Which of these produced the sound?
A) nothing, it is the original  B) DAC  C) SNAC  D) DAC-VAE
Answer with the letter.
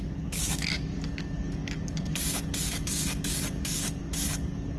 B